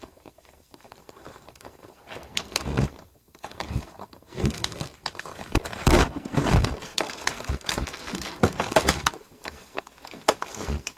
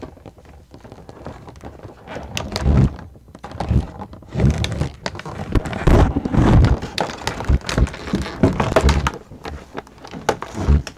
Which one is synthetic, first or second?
first